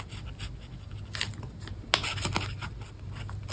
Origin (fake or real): real